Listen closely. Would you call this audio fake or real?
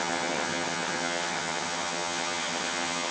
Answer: fake